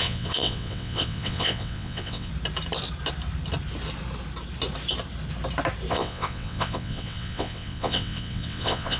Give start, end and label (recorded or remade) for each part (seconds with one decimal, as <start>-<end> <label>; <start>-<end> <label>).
0.0-2.3 remade; 2.3-5.9 recorded; 5.9-9.0 remade